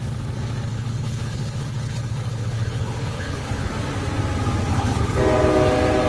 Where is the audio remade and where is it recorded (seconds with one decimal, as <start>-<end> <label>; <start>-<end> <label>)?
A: 0.0-0.7 recorded; 0.7-3.7 remade; 3.7-4.7 recorded; 4.7-5.2 remade; 5.2-6.1 recorded